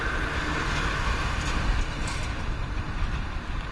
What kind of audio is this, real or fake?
real